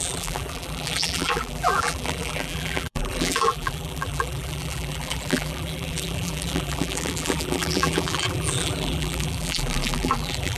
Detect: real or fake fake